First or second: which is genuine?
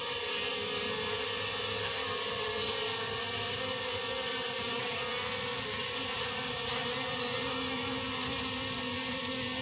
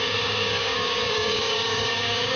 first